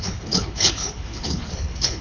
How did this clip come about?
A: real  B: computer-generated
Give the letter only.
B